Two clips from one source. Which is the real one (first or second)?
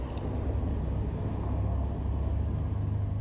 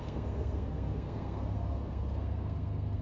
first